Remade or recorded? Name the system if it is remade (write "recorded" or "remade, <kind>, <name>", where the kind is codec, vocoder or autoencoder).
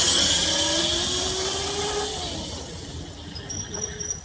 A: recorded